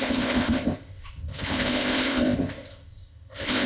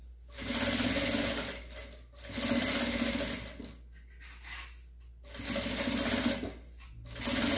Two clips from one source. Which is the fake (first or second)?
first